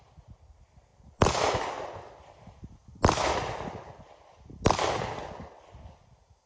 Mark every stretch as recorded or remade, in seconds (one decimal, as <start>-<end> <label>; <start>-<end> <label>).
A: 0.0-6.5 recorded